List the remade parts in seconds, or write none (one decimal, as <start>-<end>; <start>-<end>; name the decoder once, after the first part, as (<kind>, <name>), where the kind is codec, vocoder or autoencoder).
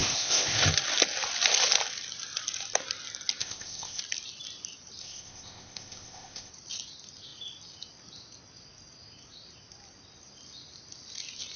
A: 0.0-0.6 (codec, ZipCodec); 3.4-4.0; 5.0-6.5